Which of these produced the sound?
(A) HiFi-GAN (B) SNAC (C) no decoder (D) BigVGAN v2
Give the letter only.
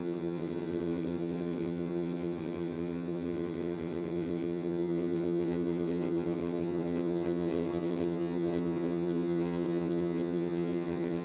A